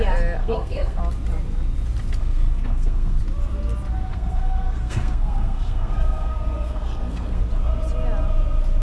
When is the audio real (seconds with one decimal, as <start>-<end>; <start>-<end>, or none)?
0.0-0.4; 1.0-2.2; 3.2-4.1; 7.4-8.8